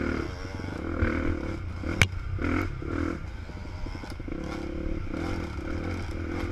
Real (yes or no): yes